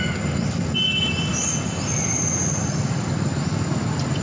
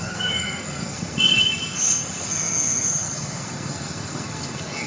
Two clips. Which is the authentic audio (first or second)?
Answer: first